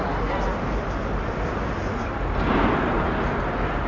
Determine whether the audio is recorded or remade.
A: recorded